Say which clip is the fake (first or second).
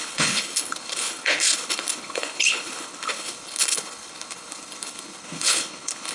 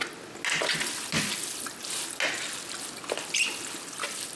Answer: first